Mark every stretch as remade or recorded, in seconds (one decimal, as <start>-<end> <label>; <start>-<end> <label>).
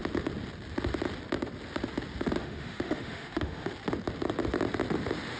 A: 0.0-2.4 recorded; 2.4-3.7 remade; 3.7-5.4 recorded